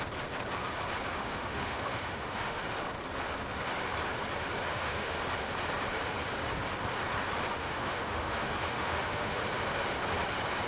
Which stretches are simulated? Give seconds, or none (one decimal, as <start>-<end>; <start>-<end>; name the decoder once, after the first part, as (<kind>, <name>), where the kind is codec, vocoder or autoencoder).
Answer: 1.1-2.6 (autoencoder, DAC-VAE); 4.7-5.2; 7.5-9.4